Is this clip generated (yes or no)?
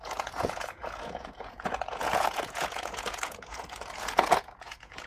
yes